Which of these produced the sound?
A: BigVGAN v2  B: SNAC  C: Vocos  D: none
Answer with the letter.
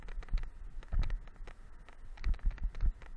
D